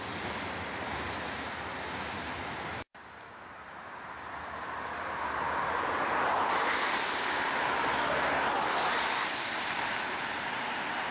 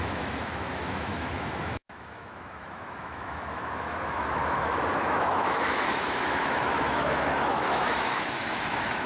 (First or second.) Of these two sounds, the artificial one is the second